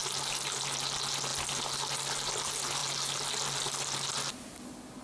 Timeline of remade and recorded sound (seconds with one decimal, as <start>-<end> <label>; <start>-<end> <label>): 0.0-5.0 recorded